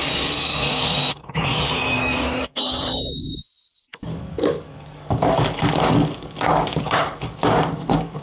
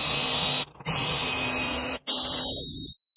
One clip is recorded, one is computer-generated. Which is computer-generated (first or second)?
first